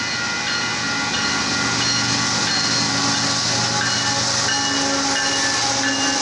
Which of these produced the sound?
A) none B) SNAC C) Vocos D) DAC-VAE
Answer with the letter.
A